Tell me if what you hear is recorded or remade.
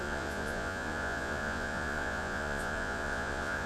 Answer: remade